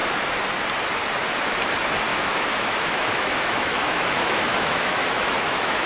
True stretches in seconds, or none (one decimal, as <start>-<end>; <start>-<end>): 0.0-2.1